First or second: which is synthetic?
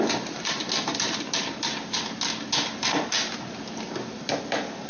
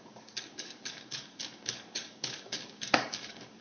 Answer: second